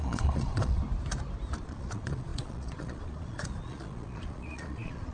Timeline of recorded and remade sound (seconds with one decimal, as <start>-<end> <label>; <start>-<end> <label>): 0.0-0.8 remade; 0.8-1.6 recorded; 1.6-5.1 remade